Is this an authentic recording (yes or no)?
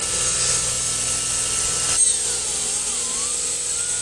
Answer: yes